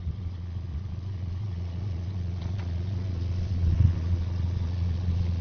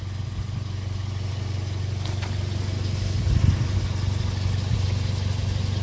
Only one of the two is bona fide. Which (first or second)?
second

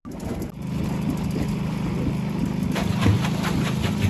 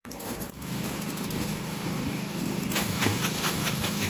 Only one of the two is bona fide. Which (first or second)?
first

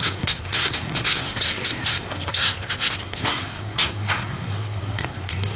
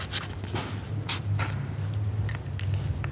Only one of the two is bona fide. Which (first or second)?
second